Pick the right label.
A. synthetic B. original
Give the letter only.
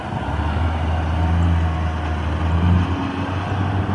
B